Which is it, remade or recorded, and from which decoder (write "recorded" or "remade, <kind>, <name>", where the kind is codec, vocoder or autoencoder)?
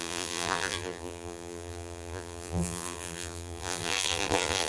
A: remade, vocoder, BigVGAN v2